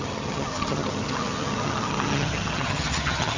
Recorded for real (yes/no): no